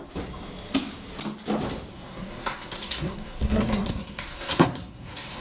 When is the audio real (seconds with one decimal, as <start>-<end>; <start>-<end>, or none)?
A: 0.0-1.9